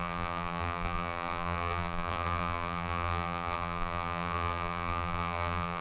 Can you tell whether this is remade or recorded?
remade